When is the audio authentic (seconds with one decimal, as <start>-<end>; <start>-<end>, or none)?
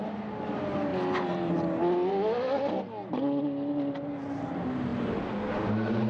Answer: 0.0-6.1